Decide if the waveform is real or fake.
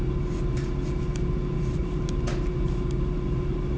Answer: real